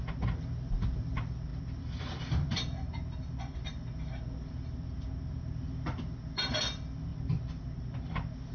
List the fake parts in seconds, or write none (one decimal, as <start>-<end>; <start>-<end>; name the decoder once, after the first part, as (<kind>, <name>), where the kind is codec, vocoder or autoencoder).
none